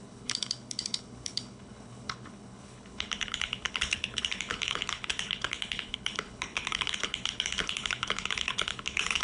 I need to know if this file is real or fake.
fake